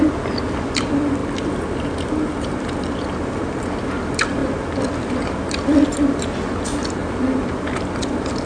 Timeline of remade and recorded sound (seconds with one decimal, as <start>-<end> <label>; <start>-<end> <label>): 0.0-1.2 recorded; 1.2-3.8 remade; 3.8-7.0 recorded; 7.0-8.5 remade